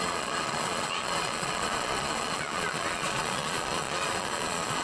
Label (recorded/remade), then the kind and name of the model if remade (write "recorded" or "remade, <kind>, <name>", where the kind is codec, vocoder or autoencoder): remade, vocoder, Vocos